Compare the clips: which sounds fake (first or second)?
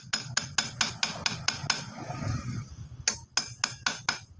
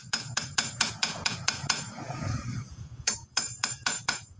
second